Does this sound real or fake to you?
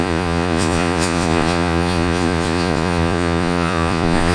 fake